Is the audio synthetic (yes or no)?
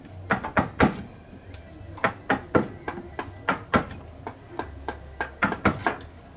no